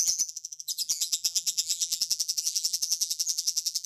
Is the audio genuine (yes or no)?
no